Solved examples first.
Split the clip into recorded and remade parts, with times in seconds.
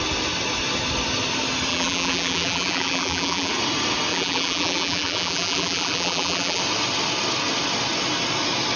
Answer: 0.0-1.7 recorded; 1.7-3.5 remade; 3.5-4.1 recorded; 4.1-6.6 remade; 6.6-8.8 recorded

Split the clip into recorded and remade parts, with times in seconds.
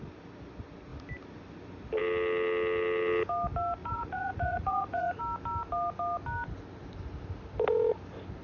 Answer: 0.0-3.8 recorded; 3.8-5.2 remade; 5.2-8.4 recorded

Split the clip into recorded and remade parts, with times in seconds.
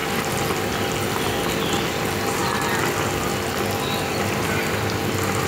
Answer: 0.0-5.5 recorded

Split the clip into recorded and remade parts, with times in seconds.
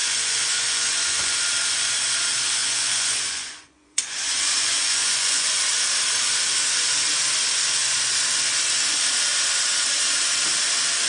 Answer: 0.0-1.4 remade; 1.4-2.6 recorded; 2.6-5.6 remade; 5.6-11.1 recorded